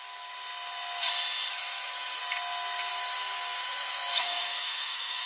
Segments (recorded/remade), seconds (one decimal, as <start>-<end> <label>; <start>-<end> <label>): 0.0-1.6 recorded; 1.6-2.2 remade; 2.2-2.9 recorded; 2.9-5.3 remade